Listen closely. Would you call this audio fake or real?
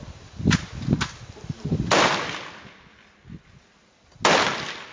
real